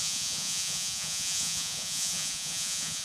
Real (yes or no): no